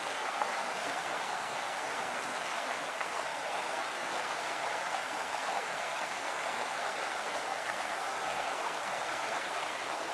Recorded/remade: remade